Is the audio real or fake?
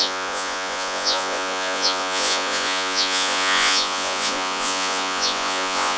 fake